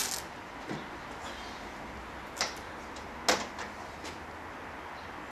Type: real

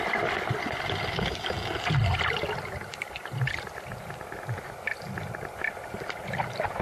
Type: real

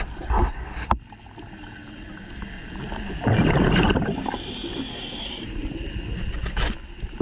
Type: real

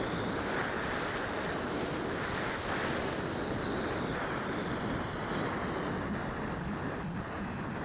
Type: real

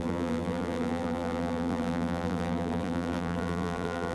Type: fake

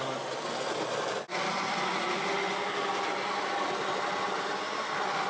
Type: real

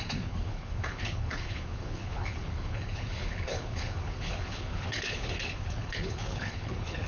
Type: fake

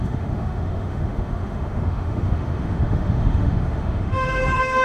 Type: fake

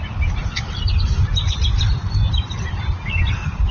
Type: real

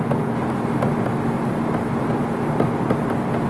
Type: real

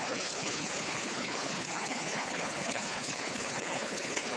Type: fake